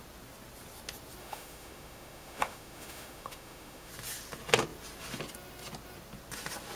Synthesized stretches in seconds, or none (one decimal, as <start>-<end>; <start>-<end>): 1.2-3.9